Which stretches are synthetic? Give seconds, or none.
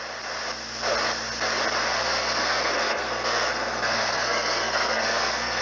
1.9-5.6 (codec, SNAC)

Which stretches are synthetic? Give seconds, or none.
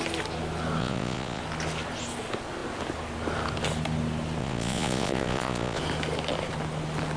0.8-1.4 (vocoder, Vocos); 4.4-5.8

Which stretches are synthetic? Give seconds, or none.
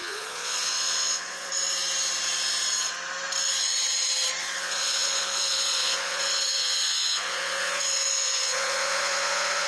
0.0-1.5 (vocoder, Vocos); 4.4-9.7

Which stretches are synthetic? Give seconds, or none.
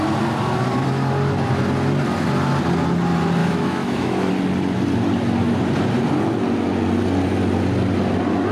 3.4-4.3 (autoencoder, DAC-VAE)